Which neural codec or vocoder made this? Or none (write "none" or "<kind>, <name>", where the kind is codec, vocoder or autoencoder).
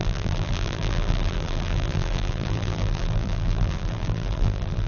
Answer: vocoder, BigVGAN v2